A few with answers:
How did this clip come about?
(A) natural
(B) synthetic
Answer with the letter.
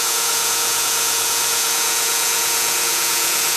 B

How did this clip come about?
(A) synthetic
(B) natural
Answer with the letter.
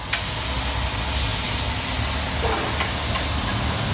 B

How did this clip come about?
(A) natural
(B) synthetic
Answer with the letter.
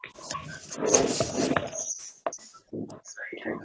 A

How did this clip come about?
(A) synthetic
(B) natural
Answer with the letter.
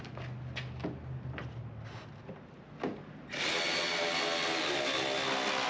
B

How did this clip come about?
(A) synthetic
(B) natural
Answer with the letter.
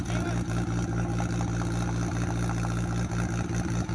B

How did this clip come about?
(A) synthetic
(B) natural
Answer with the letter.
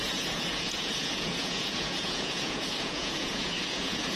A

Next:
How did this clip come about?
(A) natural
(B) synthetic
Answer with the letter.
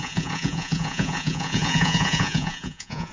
B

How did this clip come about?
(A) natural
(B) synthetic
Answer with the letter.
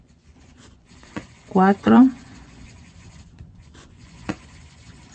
B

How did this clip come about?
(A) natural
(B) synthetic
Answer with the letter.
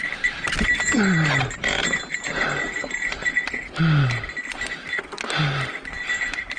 A